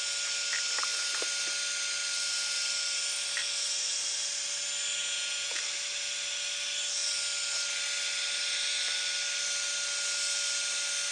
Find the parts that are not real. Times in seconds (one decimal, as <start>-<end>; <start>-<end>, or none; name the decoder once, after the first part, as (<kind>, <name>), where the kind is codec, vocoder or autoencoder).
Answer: 5.0-5.6 (vocoder, Vocos)